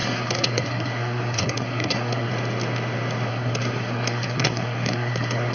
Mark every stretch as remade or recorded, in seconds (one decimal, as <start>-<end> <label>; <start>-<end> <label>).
0.0-2.3 remade; 2.3-3.3 recorded; 3.3-5.5 remade